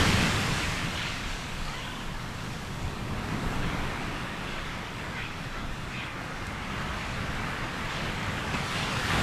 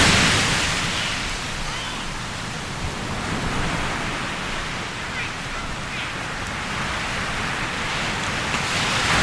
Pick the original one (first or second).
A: second